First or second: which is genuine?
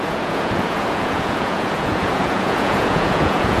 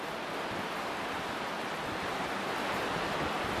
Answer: second